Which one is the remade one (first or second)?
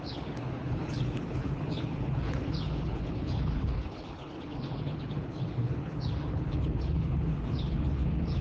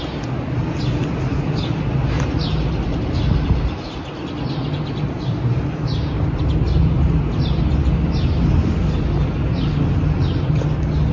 first